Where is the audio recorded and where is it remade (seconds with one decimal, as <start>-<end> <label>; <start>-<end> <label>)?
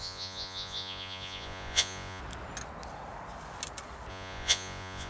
0.0-2.2 remade; 2.2-4.1 recorded; 4.1-5.1 remade